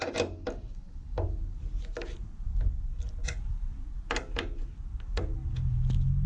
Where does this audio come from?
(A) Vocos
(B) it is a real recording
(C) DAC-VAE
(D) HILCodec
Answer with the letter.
B